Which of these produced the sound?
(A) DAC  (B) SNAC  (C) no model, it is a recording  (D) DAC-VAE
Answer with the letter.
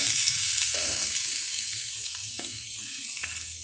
B